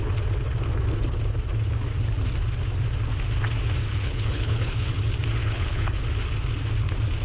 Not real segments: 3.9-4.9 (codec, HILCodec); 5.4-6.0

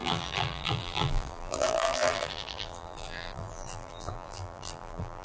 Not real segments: 0.0-5.2 (vocoder, BigVGAN v2)

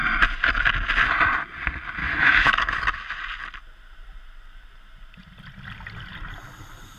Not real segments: 2.0-2.8 (autoencoder, DAC-VAE)

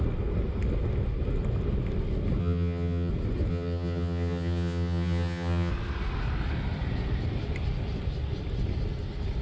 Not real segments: 2.4-3.1 (vocoder, HiFi-GAN); 3.5-5.7

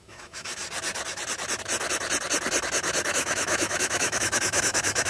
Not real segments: 0.0-0.6 (autoencoder, DAC-VAE); 3.1-5.1

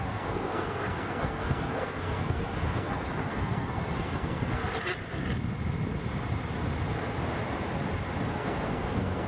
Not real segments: 0.0-4.6 (codec, SNAC); 8.3-9.3

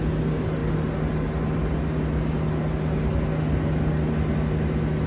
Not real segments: none

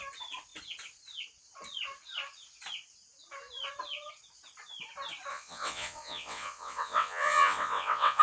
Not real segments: 5.3-8.2 (vocoder, WaveNeXt)